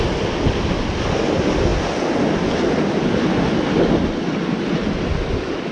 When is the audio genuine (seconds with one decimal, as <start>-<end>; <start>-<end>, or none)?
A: 0.0-5.7